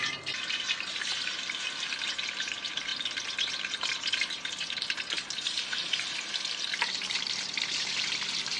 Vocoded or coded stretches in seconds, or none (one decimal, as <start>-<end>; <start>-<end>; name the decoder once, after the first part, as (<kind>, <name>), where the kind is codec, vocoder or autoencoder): 0.0-8.6 (vocoder, BigVGAN v2)